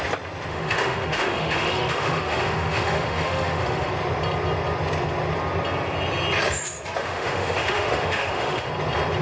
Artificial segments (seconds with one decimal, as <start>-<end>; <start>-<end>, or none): 0.5-3.9; 7.0-8.7